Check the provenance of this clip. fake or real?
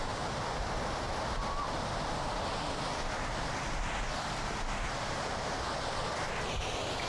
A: real